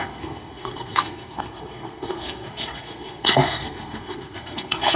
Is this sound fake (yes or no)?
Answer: yes